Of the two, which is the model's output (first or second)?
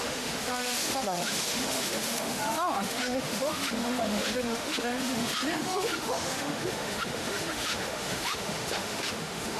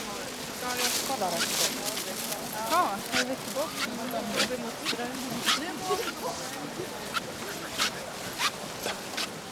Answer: first